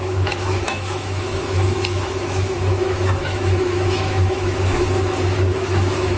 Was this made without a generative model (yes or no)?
no